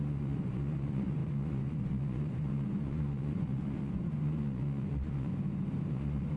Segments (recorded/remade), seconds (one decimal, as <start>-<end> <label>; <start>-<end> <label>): 0.0-5.3 remade; 5.3-5.9 recorded; 5.9-6.4 remade